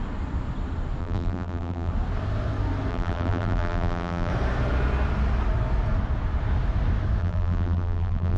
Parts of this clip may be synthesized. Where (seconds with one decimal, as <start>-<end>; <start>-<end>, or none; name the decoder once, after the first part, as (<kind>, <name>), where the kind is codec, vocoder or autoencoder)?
1.0-1.9 (vocoder, BigVGAN v2); 2.9-4.3; 7.2-8.4

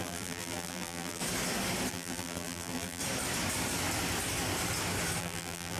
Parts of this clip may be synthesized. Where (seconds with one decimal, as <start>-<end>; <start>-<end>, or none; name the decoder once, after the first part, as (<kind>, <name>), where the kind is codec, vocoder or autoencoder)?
0.0-1.2 (vocoder, BigVGAN v2); 1.9-3.0; 5.2-5.8

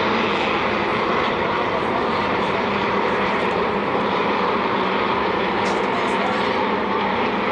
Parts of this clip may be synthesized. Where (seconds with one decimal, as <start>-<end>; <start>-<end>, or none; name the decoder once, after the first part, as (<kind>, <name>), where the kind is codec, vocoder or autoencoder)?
0.9-5.4 (vocoder, BigVGAN v2)

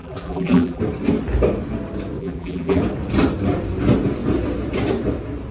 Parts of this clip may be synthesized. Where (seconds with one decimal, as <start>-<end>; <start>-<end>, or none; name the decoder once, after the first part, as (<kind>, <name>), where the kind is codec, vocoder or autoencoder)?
0.0-0.8 (vocoder, BigVGAN v2); 2.2-2.8